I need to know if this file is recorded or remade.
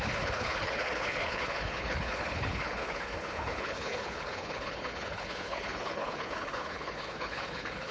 remade